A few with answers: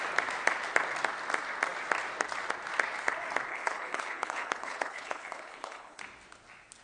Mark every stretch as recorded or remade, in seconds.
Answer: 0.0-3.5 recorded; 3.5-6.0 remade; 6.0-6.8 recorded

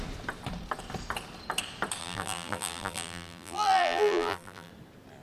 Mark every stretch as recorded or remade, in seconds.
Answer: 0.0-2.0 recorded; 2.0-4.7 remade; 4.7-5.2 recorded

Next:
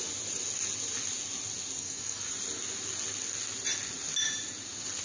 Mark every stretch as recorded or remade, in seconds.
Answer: 0.0-1.8 recorded; 1.8-2.3 remade; 2.3-5.0 recorded

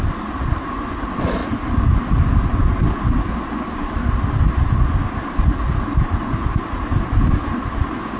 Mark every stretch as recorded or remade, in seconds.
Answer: 0.0-8.2 recorded

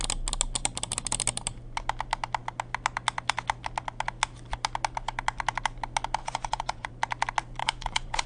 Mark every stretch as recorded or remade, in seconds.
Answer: 0.0-6.2 recorded; 6.2-6.9 remade; 6.9-7.6 recorded; 7.6-8.3 remade

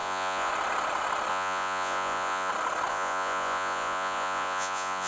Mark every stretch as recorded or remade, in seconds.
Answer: 0.0-0.5 remade; 0.5-1.3 recorded; 1.3-2.5 remade; 2.5-2.9 recorded; 2.9-5.1 remade